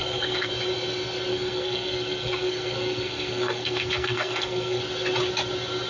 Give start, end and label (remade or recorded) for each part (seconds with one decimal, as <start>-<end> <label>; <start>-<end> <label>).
0.0-0.5 remade; 0.5-1.3 recorded; 1.3-4.8 remade; 4.8-5.9 recorded